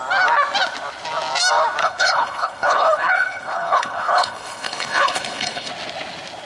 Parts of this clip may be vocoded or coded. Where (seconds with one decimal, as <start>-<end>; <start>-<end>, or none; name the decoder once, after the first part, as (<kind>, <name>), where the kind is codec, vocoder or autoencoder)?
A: 1.8-5.7 (codec, HILCodec)